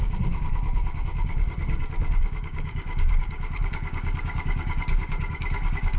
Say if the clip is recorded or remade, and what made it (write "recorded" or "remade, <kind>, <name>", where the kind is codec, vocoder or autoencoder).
remade, codec, DAC